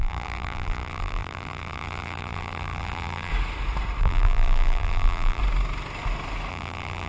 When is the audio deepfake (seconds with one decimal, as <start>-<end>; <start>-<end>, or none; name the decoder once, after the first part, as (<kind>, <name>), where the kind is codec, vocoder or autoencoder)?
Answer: 0.0-3.3 (vocoder, BigVGAN v2); 4.0-5.4; 6.5-7.1